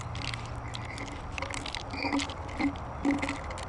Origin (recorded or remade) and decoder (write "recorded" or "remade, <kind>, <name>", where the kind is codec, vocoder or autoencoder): recorded